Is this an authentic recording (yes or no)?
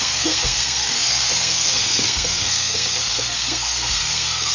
no